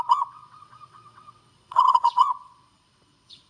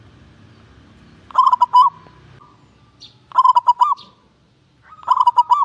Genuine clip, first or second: second